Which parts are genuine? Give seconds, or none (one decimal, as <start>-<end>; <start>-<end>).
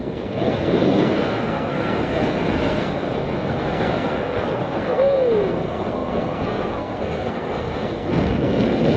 none